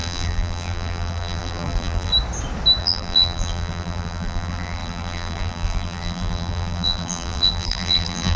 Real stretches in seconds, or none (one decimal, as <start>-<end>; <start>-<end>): 2.1-2.8